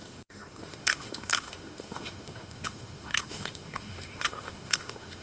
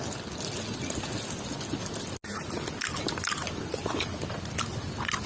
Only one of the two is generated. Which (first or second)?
first